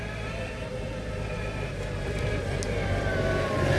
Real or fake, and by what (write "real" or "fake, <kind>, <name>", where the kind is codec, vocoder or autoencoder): fake, vocoder, BigVGAN v2